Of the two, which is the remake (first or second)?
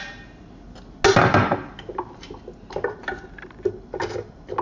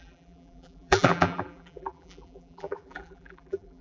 second